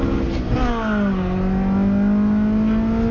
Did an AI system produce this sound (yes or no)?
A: no